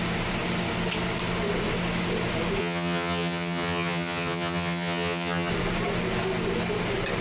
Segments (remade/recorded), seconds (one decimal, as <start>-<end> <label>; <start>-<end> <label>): 0.0-2.6 recorded; 2.6-5.5 remade; 5.5-7.2 recorded